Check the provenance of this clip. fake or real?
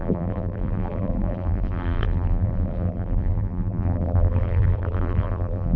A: fake